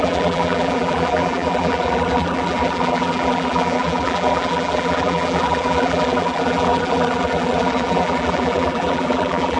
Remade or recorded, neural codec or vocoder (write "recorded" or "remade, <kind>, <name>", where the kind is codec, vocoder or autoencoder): remade, vocoder, BigVGAN v2